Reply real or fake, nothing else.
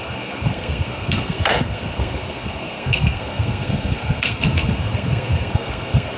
fake